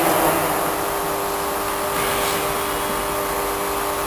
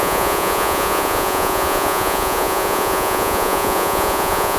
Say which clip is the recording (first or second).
first